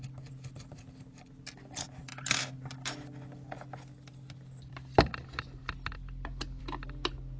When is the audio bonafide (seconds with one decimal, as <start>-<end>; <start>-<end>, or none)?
0.0-7.4